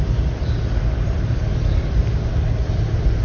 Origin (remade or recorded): recorded